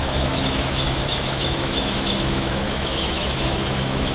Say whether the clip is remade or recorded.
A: remade